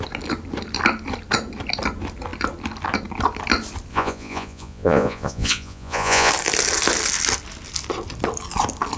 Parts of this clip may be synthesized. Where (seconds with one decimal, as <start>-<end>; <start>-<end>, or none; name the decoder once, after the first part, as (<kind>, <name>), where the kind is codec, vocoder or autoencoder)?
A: 3.9-6.3 (vocoder, Vocos)